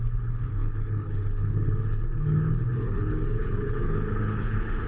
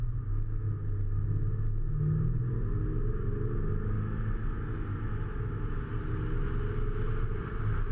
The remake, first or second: first